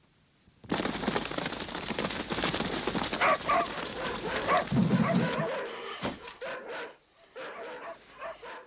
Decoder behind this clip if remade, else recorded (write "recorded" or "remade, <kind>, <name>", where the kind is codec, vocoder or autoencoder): recorded